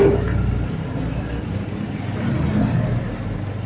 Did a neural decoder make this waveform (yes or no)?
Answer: no